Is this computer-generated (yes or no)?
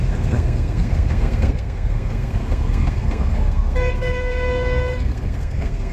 yes